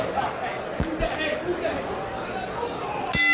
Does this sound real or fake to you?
real